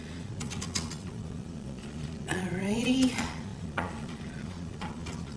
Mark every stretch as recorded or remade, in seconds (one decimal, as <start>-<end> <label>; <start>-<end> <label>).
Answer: 0.0-5.4 remade